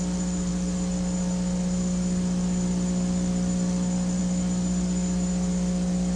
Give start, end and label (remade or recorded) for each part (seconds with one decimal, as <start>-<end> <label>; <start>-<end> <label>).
0.0-6.2 recorded